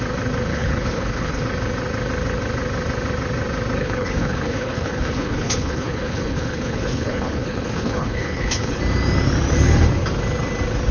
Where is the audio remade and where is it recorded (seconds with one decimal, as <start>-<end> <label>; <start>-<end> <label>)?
0.0-0.5 recorded; 0.5-1.4 remade; 1.4-3.8 recorded; 3.8-8.8 remade; 8.8-10.9 recorded